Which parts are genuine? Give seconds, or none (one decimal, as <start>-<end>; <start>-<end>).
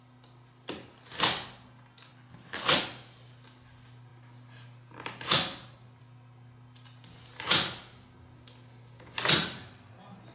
0.0-2.1; 2.8-10.3